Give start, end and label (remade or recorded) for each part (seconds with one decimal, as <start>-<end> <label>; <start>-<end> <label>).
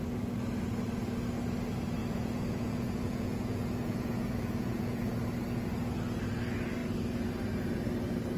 0.0-2.0 recorded; 2.0-5.0 remade; 5.0-8.4 recorded